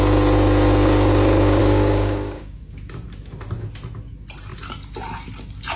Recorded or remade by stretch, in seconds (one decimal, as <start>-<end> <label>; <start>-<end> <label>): 0.0-1.6 recorded; 1.6-2.6 remade; 2.6-5.8 recorded